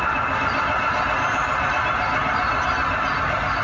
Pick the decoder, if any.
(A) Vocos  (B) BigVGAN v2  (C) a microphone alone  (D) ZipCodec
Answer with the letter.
C